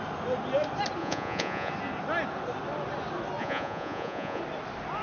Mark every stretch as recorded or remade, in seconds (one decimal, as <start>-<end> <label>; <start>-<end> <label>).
0.0-1.0 recorded; 1.0-1.7 remade; 1.7-3.4 recorded; 3.4-4.4 remade; 4.4-5.0 recorded